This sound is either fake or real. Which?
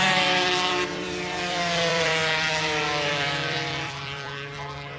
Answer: fake